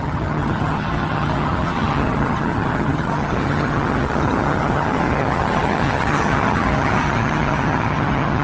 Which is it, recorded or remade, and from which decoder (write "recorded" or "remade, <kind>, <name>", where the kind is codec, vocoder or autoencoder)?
remade, vocoder, HiFi-GAN